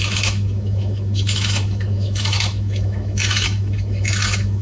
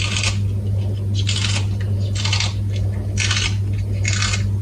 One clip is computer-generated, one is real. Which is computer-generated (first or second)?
first